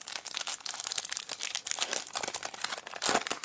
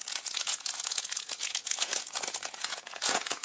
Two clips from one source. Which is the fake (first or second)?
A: second